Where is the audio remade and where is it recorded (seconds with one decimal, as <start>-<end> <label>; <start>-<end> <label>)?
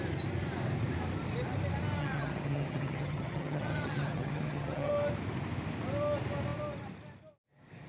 0.0-2.0 recorded; 2.0-4.9 remade; 4.9-7.9 recorded